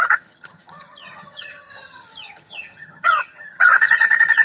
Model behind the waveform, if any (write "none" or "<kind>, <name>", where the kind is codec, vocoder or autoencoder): vocoder, HiFi-GAN